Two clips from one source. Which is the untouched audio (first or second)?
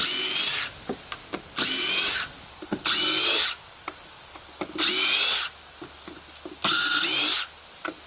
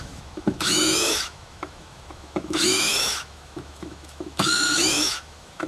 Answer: first